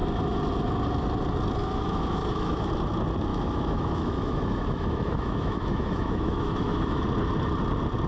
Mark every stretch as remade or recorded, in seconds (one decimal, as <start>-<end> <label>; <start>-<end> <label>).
0.0-1.6 recorded; 1.6-2.7 remade; 2.7-3.3 recorded; 3.3-7.0 remade; 7.0-8.1 recorded